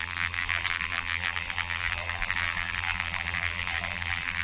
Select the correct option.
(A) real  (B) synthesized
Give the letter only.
B